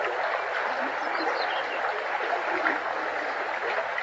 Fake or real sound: real